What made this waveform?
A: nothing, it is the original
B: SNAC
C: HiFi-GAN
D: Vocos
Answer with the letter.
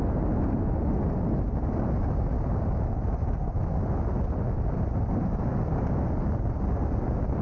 A